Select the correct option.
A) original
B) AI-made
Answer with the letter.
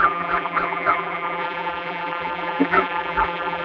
B